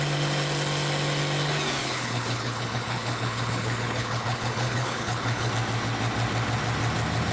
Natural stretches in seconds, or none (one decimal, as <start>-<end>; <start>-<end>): 0.0-1.8; 5.5-7.3